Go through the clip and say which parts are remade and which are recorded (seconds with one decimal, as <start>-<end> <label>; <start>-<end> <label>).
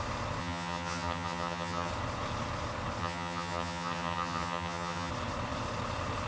0.0-0.4 recorded; 0.4-1.9 remade; 1.9-3.0 recorded; 3.0-5.1 remade; 5.1-6.3 recorded